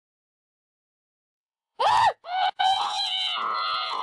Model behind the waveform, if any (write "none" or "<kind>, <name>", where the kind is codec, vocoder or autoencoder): vocoder, Vocos